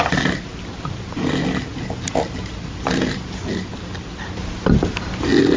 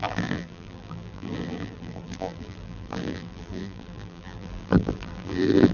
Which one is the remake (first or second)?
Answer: second